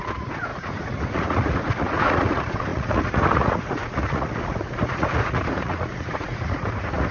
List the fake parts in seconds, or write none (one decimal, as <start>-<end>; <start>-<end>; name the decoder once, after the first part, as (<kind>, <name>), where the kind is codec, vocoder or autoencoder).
0.0-7.1 (vocoder, Vocos)